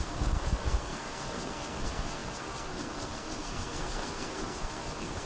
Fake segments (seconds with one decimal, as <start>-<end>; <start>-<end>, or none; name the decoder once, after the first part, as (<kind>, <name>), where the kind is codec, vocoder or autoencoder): 0.0-5.3 (codec, SNAC)